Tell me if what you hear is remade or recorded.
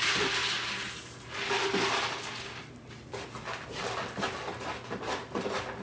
recorded